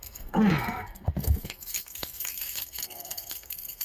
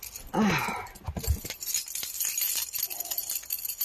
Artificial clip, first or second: first